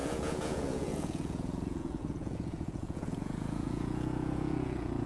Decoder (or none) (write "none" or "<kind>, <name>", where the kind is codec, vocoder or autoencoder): vocoder, Vocos